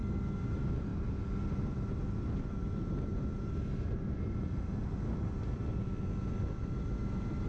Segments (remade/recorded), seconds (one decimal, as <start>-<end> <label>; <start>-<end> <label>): 0.0-0.5 recorded; 0.5-0.9 remade; 0.9-2.2 recorded; 2.2-7.5 remade